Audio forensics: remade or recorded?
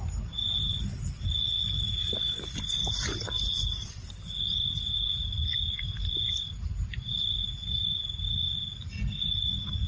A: recorded